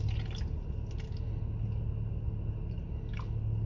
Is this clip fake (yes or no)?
no